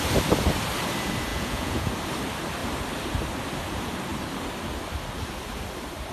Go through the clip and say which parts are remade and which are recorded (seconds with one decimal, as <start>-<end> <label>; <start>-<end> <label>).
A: 0.0-1.3 recorded; 1.3-1.9 remade; 1.9-6.1 recorded